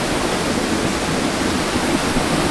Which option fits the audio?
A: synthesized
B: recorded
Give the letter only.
B